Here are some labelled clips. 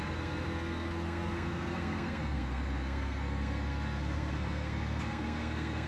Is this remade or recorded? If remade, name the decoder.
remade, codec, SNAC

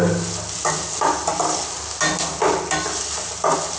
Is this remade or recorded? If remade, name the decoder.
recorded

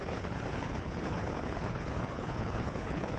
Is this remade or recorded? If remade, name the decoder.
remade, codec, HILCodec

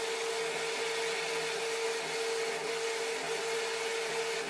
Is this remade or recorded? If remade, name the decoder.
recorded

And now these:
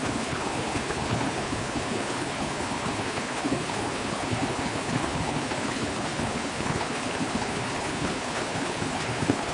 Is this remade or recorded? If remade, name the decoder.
remade, codec, HILCodec